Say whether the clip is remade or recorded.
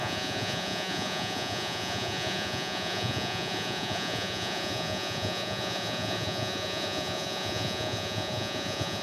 remade